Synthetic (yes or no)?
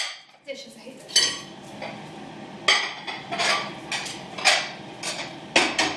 no